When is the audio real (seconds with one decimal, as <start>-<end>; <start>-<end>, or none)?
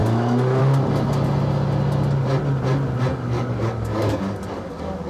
0.6-3.1